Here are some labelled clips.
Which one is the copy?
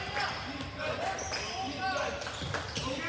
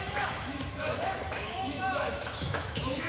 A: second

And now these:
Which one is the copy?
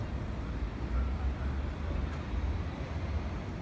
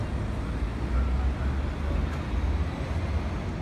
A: first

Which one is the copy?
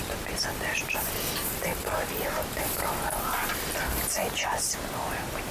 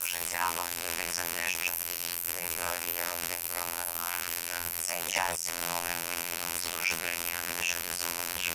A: second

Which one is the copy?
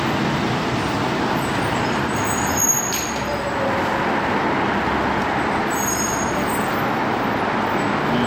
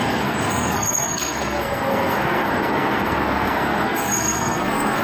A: second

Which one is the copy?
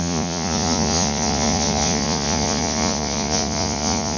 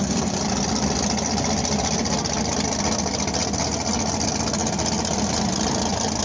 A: first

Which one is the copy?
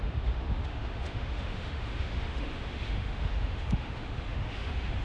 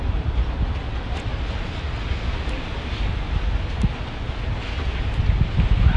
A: first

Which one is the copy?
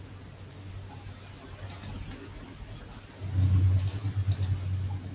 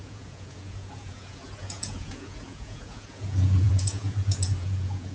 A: second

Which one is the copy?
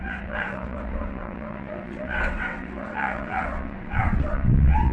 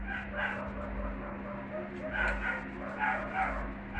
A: first